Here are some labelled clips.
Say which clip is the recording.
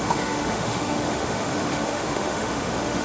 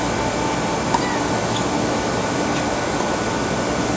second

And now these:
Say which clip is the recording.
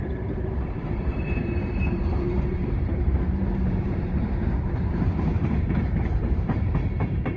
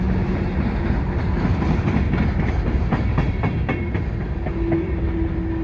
second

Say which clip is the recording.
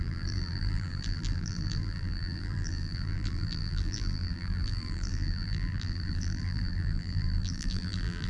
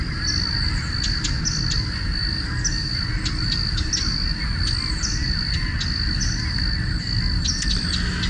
second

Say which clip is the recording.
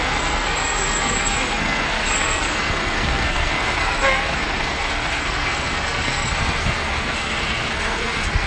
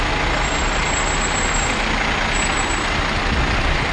second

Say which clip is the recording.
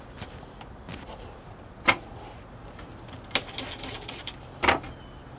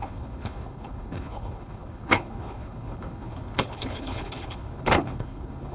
first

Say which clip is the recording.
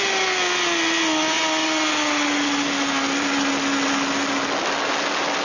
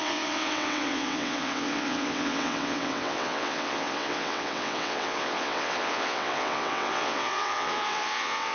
first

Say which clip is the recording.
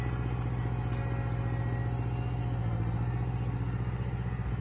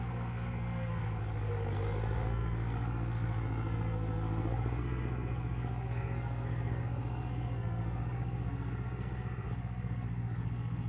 first